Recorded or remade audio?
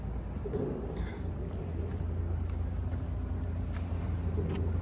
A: recorded